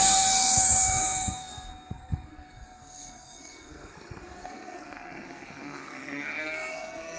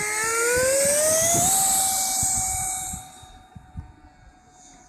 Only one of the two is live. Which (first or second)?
second